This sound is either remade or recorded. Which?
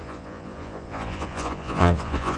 remade